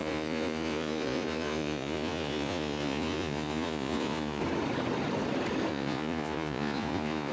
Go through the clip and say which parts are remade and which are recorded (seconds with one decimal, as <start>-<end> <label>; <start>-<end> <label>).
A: 0.0-4.4 remade; 4.4-5.7 recorded; 5.7-7.3 remade

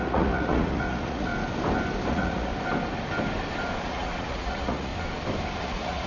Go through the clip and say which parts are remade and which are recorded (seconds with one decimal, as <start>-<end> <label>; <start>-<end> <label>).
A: 0.0-1.3 remade; 1.3-2.1 recorded; 2.1-2.5 remade; 2.5-3.8 recorded; 3.8-4.9 remade; 4.9-5.6 recorded; 5.6-6.1 remade

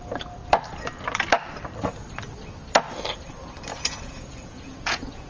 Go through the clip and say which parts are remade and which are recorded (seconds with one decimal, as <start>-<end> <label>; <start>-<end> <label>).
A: 0.0-3.7 recorded; 3.7-5.3 remade

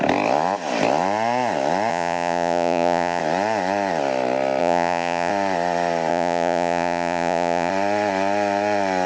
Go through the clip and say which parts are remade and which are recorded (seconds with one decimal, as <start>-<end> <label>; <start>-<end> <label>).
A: 0.0-1.9 recorded; 1.9-3.2 remade; 3.2-4.6 recorded; 4.6-5.3 remade; 5.3-6.1 recorded; 6.1-7.7 remade; 7.7-9.1 recorded